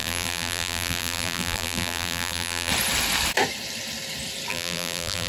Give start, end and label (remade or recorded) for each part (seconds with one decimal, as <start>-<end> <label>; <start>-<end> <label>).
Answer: 0.0-2.7 remade; 2.7-4.5 recorded; 4.5-5.3 remade